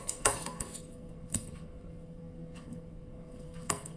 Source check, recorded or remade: remade